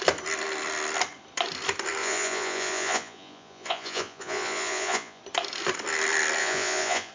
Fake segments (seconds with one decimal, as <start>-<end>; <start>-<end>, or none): 2.0-5.2; 6.4-7.1